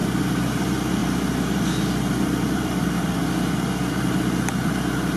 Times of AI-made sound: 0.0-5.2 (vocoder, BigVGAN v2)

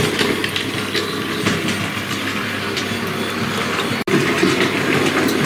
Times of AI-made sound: none

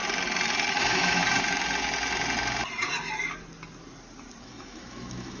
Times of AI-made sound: 0.7-1.2 (autoencoder, DAC-VAE); 4.4-5.4

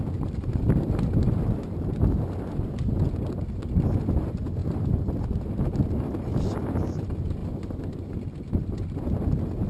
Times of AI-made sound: 4.6-5.6 (vocoder, BigVGAN v2)

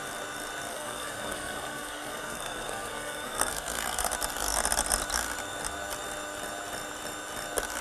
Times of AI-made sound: 0.7-4.1 (codec, SNAC)

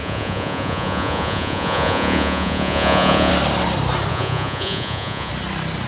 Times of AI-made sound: 0.0-3.3 (vocoder, Vocos); 4.1-5.3

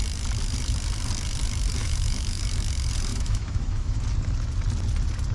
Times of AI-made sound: 1.8-2.4 (autoencoder, DAC-VAE); 3.1-4.0

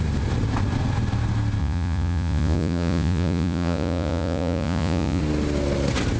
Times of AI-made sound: 1.6-5.2 (vocoder, Vocos)